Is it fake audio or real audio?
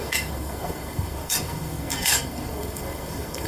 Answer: fake